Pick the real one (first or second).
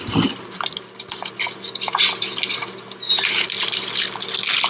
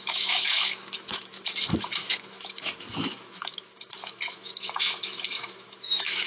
first